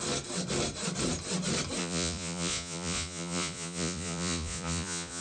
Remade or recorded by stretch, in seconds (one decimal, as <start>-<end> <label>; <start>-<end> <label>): 0.0-1.8 recorded; 1.8-5.2 remade